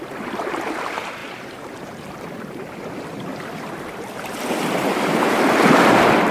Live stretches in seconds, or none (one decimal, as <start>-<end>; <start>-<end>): none